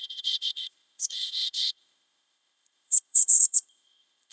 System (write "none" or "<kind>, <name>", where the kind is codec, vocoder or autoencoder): codec, ZipCodec